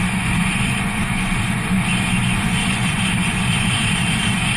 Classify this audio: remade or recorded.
remade